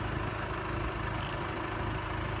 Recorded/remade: recorded